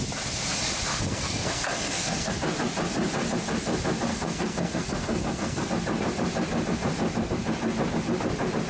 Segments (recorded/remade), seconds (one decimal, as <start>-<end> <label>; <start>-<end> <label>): 0.0-0.9 recorded; 0.9-2.3 remade; 2.3-4.1 recorded; 4.1-5.7 remade; 5.7-8.7 recorded